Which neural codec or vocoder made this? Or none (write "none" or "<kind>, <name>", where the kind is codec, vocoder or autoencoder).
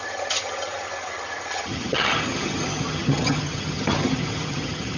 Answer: vocoder, HiFi-GAN